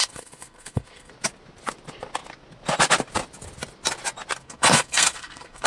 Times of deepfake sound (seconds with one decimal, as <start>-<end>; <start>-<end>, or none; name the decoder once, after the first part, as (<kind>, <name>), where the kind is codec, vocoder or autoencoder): 0.0-1.1 (codec, SNAC); 4.4-5.7